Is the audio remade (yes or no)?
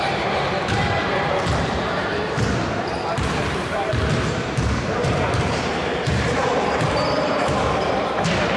yes